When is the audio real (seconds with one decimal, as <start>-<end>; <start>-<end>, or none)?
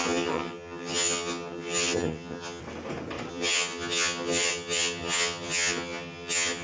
2.6-3.3